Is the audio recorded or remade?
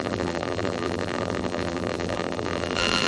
remade